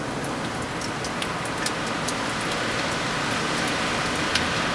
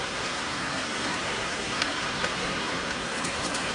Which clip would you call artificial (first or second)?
second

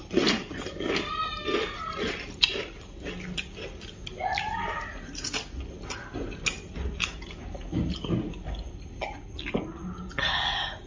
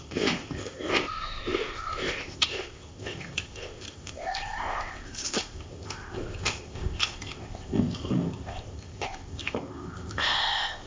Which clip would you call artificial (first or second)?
second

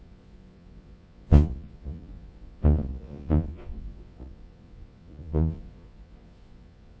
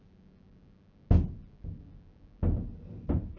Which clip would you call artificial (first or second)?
first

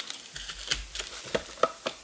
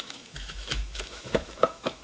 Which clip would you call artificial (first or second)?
second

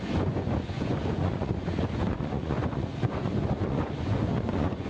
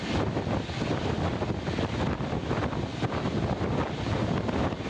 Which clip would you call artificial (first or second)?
first